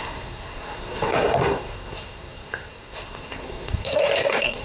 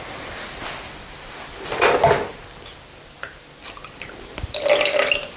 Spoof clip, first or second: first